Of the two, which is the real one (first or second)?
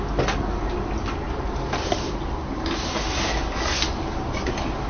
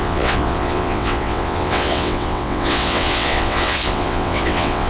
first